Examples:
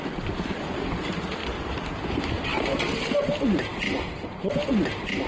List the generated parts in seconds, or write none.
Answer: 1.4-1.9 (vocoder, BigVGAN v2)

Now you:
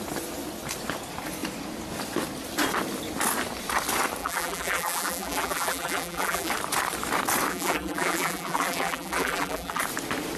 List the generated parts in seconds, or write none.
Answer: 4.2-6.5 (vocoder, BigVGAN v2); 7.5-9.8

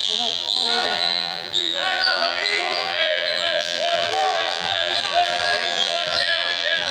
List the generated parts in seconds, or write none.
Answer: 0.0-6.9 (vocoder, BigVGAN v2)

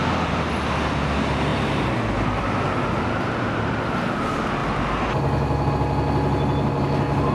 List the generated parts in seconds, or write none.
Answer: none

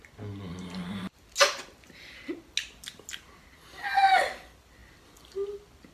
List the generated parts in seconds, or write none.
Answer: none

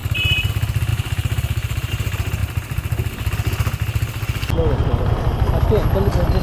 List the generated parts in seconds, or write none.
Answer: 0.0-0.5 (vocoder, BigVGAN v2); 0.9-1.9

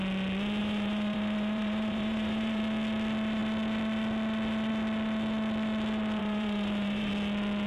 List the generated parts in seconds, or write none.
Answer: 0.6-2.6 (vocoder, BigVGAN v2); 6.2-7.1

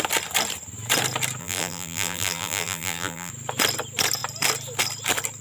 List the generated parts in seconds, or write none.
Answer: 1.4-3.3 (vocoder, BigVGAN v2)